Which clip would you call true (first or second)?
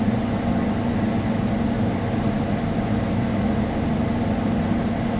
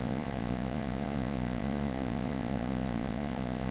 first